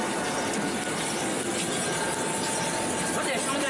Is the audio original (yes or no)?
yes